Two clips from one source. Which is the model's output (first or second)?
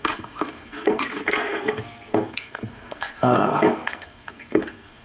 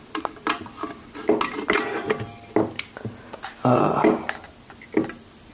first